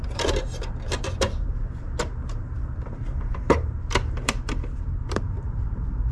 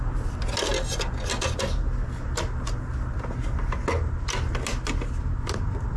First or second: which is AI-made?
first